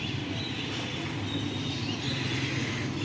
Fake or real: real